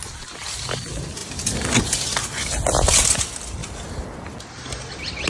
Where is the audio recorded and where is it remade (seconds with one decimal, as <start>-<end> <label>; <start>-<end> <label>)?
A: 0.0-5.3 recorded